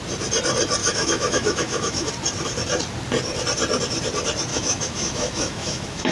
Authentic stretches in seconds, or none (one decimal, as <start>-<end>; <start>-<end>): 0.0-0.8; 2.1-4.5